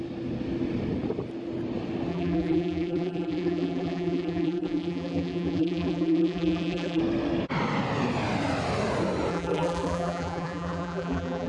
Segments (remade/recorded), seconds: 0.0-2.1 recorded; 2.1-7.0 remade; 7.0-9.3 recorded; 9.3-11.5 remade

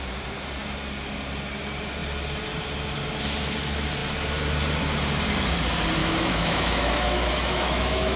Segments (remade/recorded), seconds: 0.0-6.0 recorded; 6.0-8.2 remade

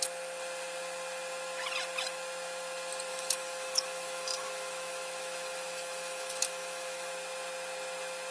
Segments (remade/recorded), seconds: 0.0-3.1 recorded; 3.1-7.1 remade; 7.1-8.3 recorded

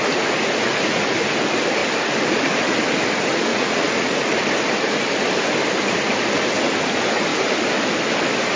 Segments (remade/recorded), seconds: 0.0-3.5 recorded; 3.5-4.3 remade; 4.3-8.6 recorded